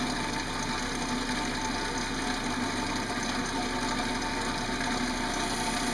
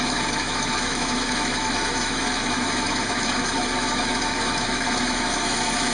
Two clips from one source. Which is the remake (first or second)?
second